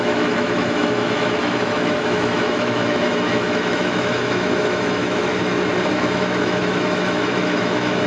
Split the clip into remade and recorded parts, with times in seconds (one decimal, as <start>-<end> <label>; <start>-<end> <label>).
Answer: 0.0-5.3 remade; 5.3-5.9 recorded; 5.9-8.1 remade

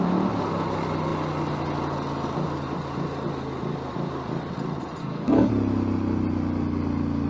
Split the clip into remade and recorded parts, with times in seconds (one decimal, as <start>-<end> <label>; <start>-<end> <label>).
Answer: 0.0-5.0 recorded; 5.0-5.5 remade; 5.5-7.3 recorded

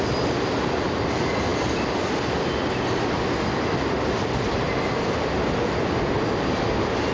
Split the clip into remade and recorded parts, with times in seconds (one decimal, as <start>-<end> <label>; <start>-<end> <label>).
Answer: 0.0-7.1 recorded

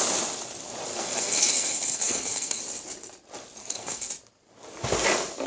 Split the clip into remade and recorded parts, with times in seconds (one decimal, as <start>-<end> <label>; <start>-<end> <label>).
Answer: 0.0-0.9 recorded; 0.9-2.6 remade; 2.6-3.6 recorded; 3.6-4.1 remade; 4.1-5.5 recorded

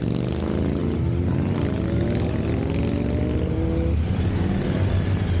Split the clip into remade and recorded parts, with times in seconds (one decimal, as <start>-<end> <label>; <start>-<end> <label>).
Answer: 0.0-5.4 recorded

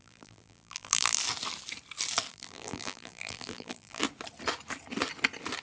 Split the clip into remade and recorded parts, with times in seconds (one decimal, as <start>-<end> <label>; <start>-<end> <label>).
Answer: 0.0-1.2 remade; 1.2-2.3 recorded; 2.3-4.0 remade; 4.0-5.6 recorded